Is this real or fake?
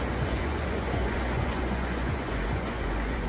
fake